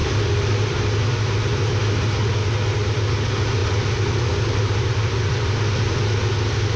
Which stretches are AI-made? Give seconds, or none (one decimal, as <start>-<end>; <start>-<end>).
0.0-0.8; 3.6-5.4